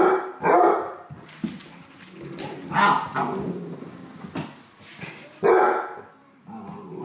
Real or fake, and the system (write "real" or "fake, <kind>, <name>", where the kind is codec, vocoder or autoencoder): real